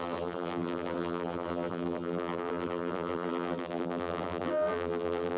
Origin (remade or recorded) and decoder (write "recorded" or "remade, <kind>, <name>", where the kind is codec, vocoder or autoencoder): remade, vocoder, BigVGAN v2